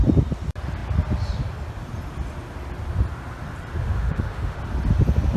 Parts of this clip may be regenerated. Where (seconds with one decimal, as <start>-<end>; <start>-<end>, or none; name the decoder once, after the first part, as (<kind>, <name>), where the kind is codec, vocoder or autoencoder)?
3.8-4.6 (autoencoder, DAC-VAE)